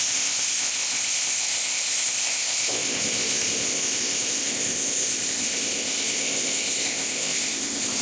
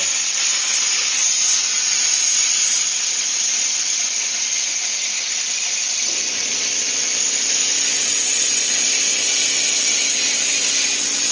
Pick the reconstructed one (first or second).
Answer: first